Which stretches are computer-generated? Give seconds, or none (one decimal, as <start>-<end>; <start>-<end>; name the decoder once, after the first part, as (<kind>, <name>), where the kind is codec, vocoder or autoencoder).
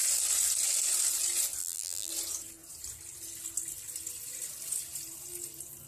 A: 1.6-2.1 (vocoder, BigVGAN v2)